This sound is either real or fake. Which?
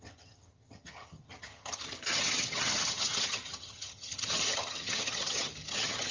fake